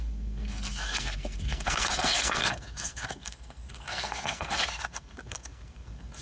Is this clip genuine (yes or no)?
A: no